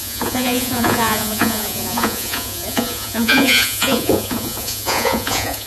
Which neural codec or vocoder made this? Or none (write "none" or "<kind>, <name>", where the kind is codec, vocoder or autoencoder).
vocoder, Vocos